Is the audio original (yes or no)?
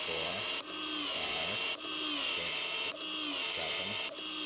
yes